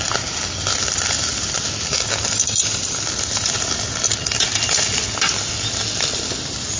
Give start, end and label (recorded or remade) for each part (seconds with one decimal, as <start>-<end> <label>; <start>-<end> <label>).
0.0-6.8 recorded